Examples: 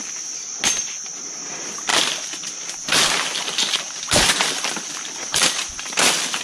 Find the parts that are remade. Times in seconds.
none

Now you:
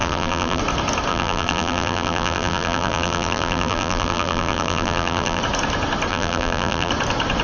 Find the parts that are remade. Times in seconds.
0.0-0.6 (vocoder, BigVGAN v2); 1.1-5.4; 6.1-6.9

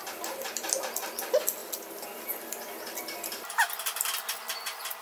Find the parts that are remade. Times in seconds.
0.0-5.0 (vocoder, BigVGAN v2)

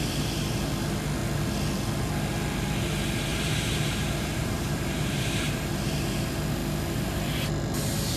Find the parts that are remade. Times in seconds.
3.3-5.7 (vocoder, BigVGAN v2)

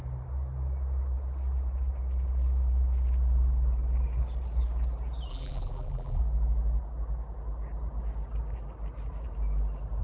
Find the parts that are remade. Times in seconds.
5.3-6.2 (vocoder, BigVGAN v2)